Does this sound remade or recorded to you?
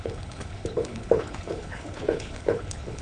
remade